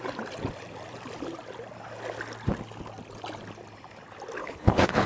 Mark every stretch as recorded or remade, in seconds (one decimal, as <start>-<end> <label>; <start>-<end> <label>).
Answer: 0.0-4.4 recorded; 4.4-5.1 remade